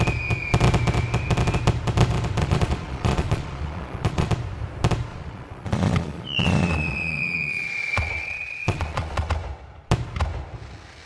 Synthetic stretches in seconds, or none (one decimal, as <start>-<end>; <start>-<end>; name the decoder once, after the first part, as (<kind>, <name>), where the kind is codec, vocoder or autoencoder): 2.4-4.3 (vocoder, Vocos); 5.1-9.3